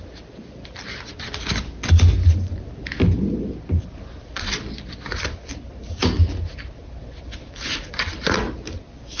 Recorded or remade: recorded